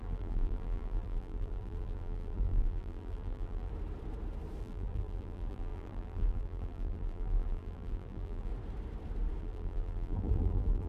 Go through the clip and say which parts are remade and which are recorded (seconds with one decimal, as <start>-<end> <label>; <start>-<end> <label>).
0.0-3.7 remade; 3.7-4.6 recorded; 4.6-8.5 remade; 8.5-9.4 recorded; 9.4-10.9 remade